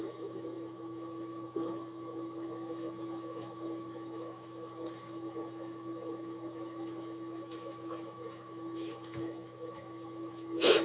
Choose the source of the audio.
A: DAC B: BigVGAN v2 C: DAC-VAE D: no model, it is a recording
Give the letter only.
C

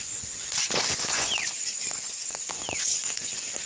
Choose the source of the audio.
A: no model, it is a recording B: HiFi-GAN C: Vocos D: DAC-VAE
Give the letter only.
C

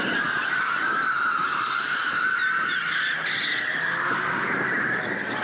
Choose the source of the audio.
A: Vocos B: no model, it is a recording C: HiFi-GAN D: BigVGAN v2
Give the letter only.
B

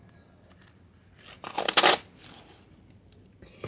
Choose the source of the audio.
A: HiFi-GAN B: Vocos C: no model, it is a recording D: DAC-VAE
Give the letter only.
C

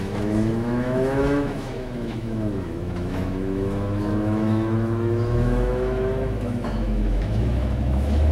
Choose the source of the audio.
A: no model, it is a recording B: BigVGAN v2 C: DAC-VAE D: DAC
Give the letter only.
C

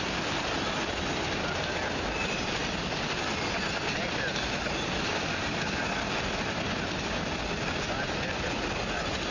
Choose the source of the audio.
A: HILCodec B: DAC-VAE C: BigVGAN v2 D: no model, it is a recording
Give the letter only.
D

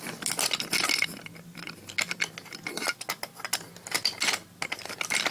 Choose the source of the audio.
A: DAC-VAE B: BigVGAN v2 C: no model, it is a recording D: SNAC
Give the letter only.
C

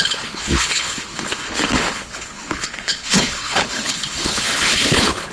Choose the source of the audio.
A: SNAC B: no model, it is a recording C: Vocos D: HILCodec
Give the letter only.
D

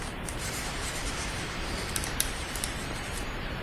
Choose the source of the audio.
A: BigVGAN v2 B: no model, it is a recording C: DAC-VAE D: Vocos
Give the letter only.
A